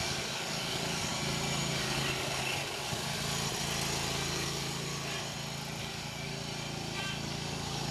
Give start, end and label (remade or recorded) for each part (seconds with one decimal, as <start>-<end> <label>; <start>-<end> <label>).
0.0-1.1 remade; 1.1-1.7 recorded; 1.7-3.1 remade; 3.1-4.3 recorded; 4.3-4.9 remade; 4.9-5.8 recorded; 5.8-6.3 remade; 6.3-7.1 recorded; 7.1-7.9 remade